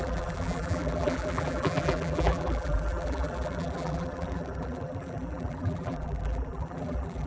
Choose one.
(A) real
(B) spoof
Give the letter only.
B